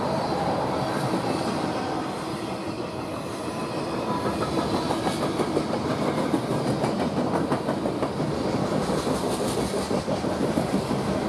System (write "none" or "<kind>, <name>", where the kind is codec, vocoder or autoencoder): none